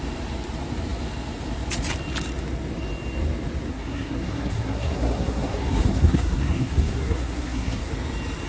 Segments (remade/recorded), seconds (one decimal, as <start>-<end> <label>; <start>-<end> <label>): 0.0-3.7 recorded; 3.7-7.9 remade; 7.9-8.5 recorded